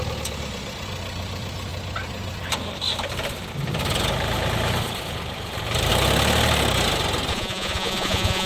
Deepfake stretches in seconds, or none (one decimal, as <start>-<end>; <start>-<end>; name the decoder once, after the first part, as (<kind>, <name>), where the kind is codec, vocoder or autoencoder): 7.3-8.5 (vocoder, Vocos)